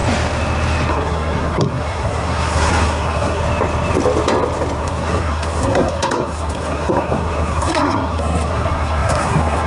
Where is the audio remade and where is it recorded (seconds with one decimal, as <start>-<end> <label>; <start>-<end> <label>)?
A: 0.0-0.9 recorded; 0.9-3.4 remade; 3.4-4.8 recorded; 4.8-9.7 remade